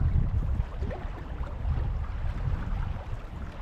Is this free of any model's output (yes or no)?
yes